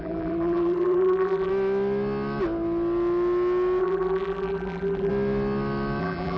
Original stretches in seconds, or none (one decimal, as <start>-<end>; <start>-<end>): 1.5-3.8; 5.1-6.0